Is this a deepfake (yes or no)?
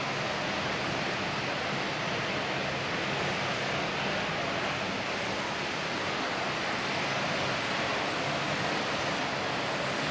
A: no